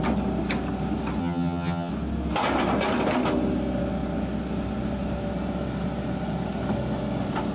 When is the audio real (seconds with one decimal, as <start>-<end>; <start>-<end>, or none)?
0.0-1.2; 1.9-7.5